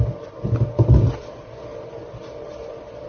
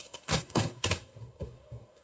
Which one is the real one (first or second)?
first